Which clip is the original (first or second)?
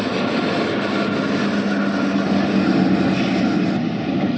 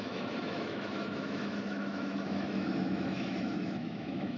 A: first